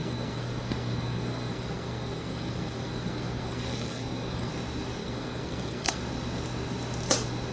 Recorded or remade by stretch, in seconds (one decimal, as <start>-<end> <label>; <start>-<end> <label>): 0.0-4.5 remade; 4.5-5.0 recorded; 5.0-6.0 remade; 6.0-7.5 recorded